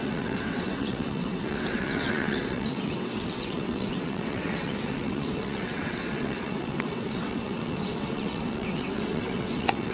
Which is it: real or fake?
fake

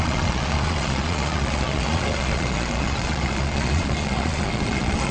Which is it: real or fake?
fake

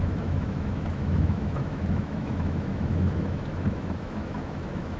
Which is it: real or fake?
fake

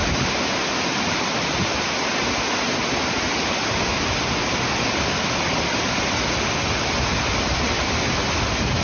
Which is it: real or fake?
real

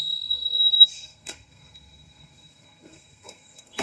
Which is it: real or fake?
fake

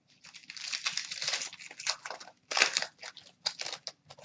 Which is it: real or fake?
real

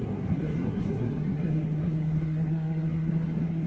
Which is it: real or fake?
fake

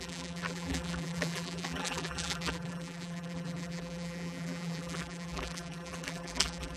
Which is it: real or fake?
fake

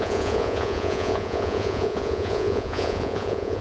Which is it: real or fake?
fake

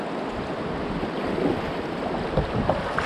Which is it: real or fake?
real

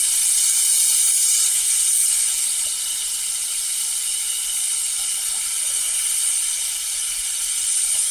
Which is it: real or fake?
real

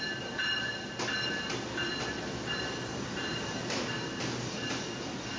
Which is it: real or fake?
real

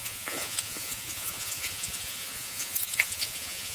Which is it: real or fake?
fake